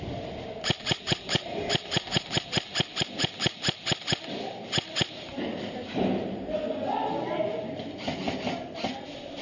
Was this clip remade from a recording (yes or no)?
no